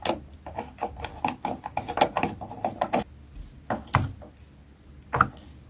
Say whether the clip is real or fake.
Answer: real